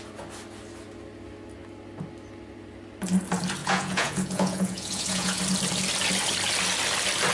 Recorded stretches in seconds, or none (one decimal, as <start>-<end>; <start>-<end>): 0.0-3.6; 5.4-7.3